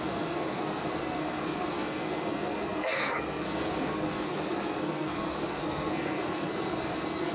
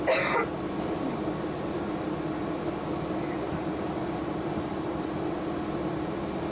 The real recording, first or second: second